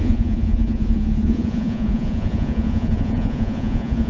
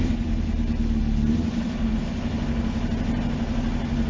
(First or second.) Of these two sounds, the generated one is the first